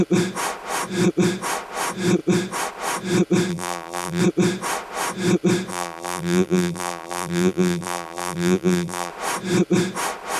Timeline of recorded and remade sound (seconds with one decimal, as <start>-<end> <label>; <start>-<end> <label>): 0.0-3.5 recorded; 3.5-4.2 remade; 4.2-5.7 recorded; 5.7-9.1 remade; 9.1-10.4 recorded